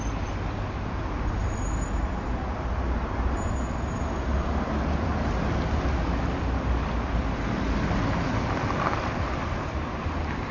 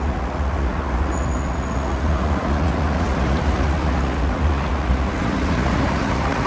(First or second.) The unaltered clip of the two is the first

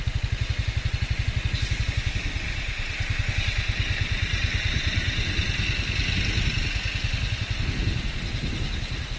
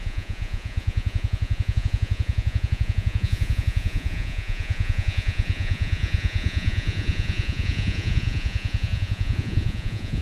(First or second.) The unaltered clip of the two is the first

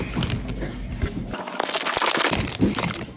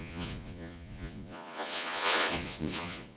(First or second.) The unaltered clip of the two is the first